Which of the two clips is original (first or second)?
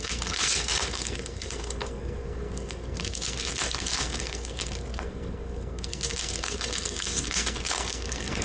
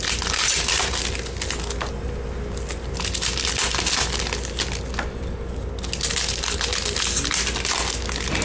second